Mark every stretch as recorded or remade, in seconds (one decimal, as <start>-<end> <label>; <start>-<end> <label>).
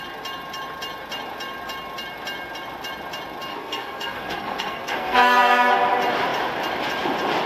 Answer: 0.0-3.5 recorded; 3.5-5.7 remade; 5.7-7.5 recorded